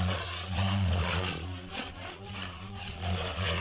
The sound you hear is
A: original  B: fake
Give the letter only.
B